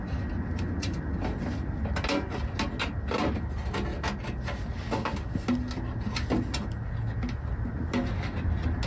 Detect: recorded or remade recorded